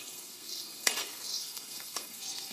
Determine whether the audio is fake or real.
fake